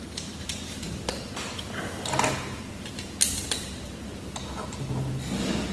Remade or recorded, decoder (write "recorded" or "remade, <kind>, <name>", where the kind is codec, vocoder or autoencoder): recorded